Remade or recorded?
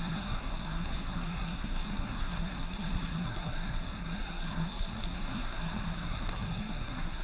remade